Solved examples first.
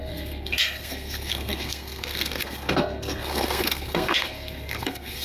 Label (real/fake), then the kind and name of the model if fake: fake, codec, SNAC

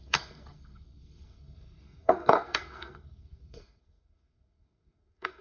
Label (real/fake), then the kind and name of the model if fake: fake, codec, SNAC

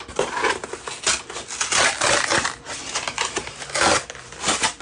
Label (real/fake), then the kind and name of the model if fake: real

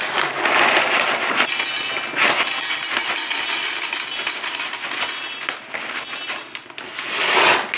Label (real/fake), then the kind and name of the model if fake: real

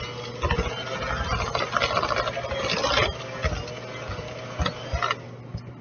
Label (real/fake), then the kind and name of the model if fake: real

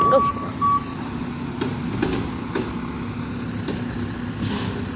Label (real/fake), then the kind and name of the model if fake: real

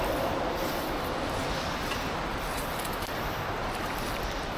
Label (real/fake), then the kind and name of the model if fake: real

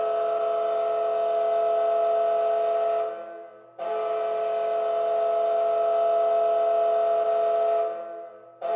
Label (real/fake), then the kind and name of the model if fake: real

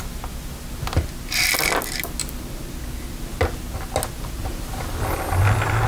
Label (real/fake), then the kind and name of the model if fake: real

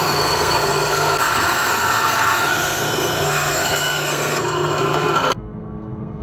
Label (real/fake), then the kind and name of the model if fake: fake, codec, SNAC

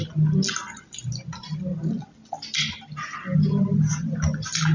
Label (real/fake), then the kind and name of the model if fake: real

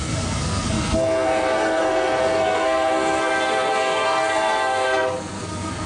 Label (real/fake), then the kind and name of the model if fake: fake, codec, SNAC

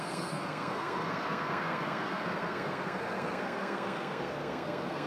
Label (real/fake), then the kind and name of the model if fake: fake, codec, SNAC